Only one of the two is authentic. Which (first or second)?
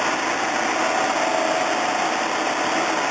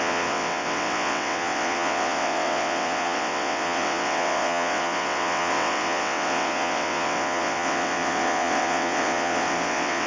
first